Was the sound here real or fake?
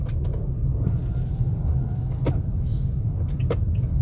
real